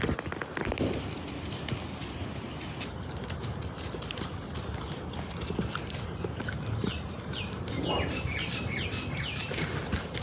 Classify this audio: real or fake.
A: real